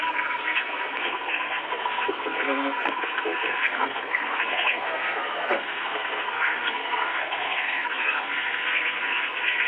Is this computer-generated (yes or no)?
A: yes